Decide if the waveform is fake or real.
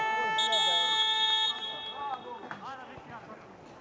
real